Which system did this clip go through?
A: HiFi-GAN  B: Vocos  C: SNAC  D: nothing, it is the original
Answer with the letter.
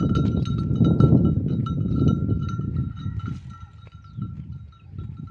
D